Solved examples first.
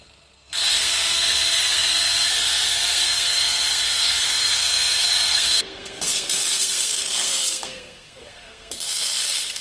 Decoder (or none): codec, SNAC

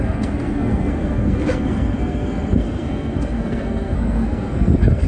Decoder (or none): codec, SNAC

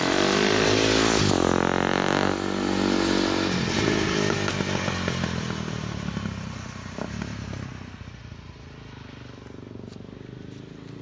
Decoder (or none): none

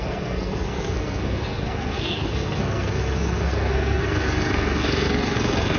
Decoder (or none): codec, SNAC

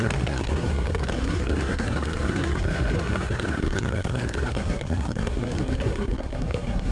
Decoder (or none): codec, SNAC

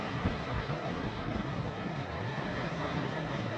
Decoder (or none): codec, SNAC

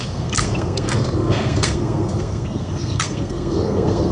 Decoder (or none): codec, SNAC